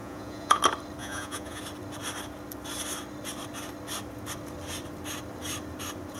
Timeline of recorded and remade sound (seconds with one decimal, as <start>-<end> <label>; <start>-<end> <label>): 0.0-0.6 remade; 0.6-1.0 recorded; 1.0-1.6 remade; 1.6-6.2 recorded